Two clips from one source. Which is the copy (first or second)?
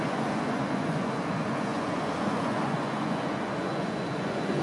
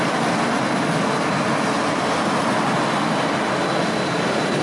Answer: first